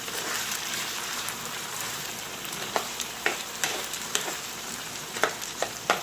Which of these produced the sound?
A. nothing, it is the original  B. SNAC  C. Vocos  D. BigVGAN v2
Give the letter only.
D